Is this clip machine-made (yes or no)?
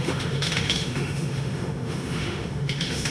yes